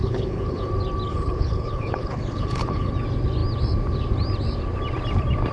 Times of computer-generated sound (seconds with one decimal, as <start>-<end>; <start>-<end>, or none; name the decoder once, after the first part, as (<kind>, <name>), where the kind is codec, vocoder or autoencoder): 0.0-0.7 (codec, HILCodec); 1.1-2.9